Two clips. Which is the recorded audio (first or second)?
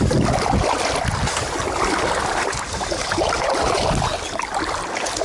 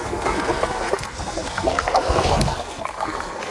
first